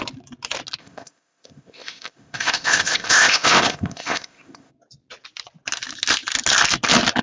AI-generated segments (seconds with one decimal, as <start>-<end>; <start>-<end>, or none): 0.8-4.7